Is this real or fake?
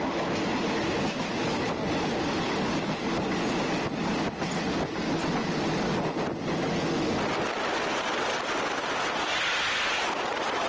real